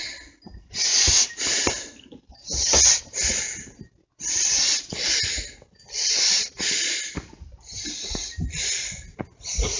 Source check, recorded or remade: recorded